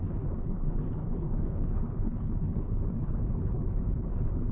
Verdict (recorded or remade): remade